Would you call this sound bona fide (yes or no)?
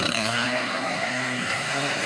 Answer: no